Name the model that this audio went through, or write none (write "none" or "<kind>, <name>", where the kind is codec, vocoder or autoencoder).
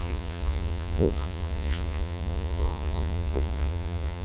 vocoder, Vocos